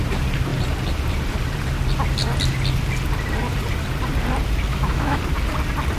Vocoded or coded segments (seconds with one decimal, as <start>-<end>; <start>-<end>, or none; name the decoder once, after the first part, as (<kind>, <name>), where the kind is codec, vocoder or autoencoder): 4.7-5.2 (autoencoder, DAC-VAE)